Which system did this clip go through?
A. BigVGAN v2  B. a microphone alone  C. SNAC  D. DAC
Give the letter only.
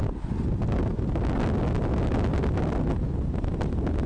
B